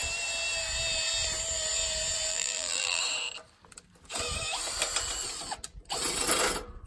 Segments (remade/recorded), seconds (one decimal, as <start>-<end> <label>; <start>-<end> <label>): 0.0-2.3 recorded; 2.3-3.0 remade; 3.0-6.9 recorded